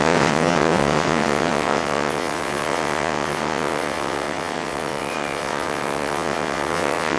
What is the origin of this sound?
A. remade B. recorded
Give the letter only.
A